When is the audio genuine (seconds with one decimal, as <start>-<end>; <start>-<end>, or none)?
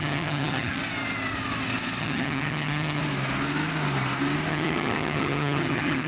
0.8-2.0; 3.0-4.5